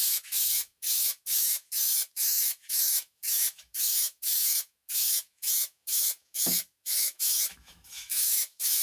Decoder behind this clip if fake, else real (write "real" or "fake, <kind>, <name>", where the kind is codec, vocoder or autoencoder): fake, autoencoder, DAC-VAE